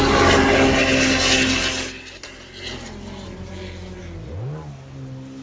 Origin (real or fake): real